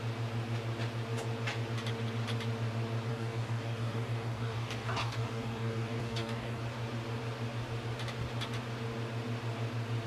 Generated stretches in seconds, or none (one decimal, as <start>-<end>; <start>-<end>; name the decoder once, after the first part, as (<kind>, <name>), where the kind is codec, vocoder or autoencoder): 3.1-6.6 (codec, DAC)